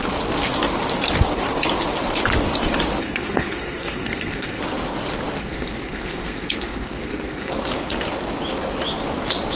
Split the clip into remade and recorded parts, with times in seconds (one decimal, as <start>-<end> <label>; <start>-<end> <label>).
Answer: 0.0-3.0 recorded; 3.0-4.6 remade; 4.6-5.4 recorded; 5.4-7.5 remade; 7.5-9.6 recorded